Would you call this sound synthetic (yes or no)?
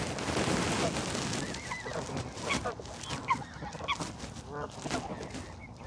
no